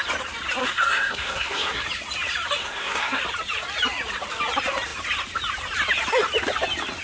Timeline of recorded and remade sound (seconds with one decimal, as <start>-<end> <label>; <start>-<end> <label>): 0.0-0.6 recorded; 0.6-1.8 remade; 1.8-2.6 recorded; 2.6-3.2 remade; 3.2-7.0 recorded